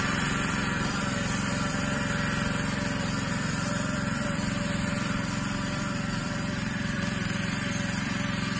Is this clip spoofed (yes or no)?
yes